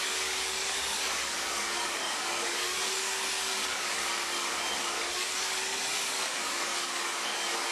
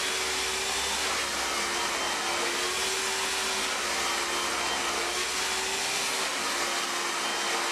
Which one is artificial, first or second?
first